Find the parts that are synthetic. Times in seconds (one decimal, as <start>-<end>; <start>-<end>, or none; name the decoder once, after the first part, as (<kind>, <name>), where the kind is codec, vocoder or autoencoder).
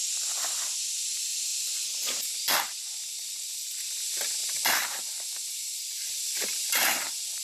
1.5-2.3 (vocoder, BigVGAN v2); 4.4-6.7